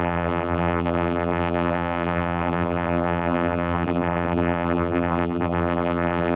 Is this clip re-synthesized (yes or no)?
yes